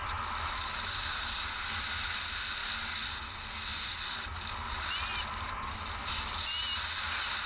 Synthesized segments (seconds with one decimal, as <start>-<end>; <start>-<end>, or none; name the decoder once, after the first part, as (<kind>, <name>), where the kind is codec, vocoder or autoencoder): none